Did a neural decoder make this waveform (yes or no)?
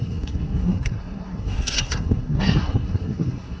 yes